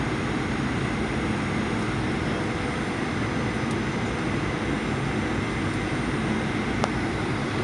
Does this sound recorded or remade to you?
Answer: recorded